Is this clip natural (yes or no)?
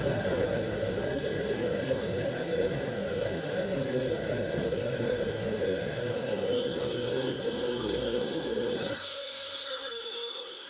no